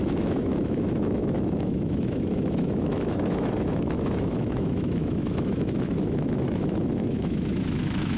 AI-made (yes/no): yes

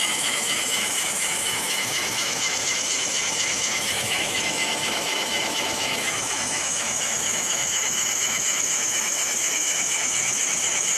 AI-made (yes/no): yes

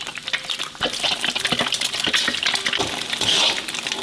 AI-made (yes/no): no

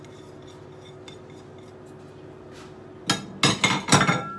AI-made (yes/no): no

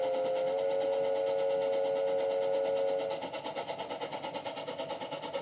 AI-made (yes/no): no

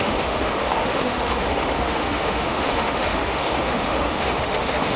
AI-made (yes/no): yes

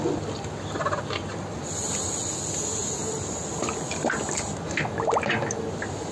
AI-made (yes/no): no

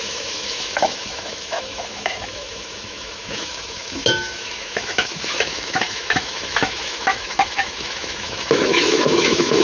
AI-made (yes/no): yes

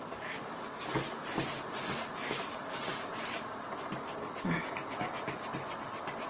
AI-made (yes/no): no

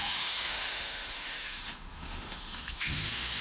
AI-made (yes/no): yes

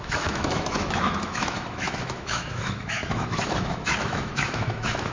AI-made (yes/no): yes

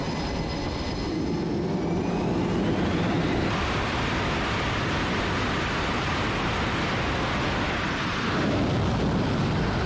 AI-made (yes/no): no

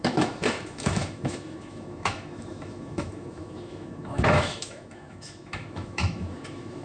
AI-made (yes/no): yes